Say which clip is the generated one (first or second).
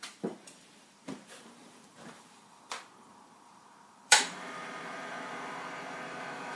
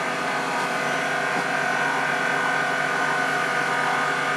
first